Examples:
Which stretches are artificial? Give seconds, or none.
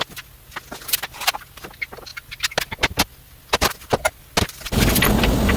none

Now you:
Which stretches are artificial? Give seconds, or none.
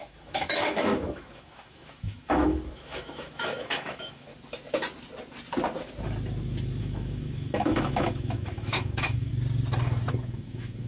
0.0-4.3 (autoencoder, DAC-VAE); 6.8-9.3; 10.1-10.9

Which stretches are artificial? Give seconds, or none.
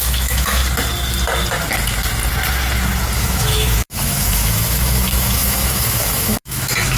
0.0-0.6 (autoencoder, DAC-VAE); 3.2-7.0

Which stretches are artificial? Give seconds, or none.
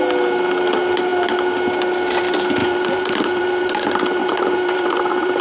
2.6-3.8 (vocoder, BigVGAN v2); 4.2-5.4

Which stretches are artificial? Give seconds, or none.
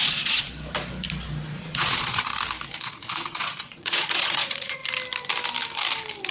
0.0-0.5 (vocoder, Vocos); 1.6-2.3; 2.8-4.8